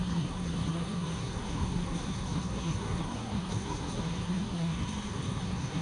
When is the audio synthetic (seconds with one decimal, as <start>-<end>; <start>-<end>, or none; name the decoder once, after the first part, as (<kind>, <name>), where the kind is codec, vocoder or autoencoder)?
0.0-5.8 (codec, SNAC)